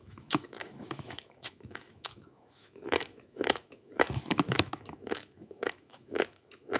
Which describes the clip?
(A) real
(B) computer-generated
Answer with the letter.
B